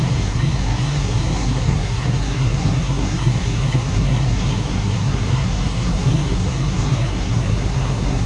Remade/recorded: remade